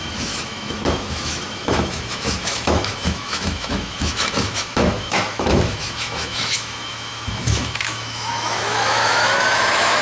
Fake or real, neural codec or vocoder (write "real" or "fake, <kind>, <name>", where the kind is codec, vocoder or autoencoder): fake, autoencoder, DAC-VAE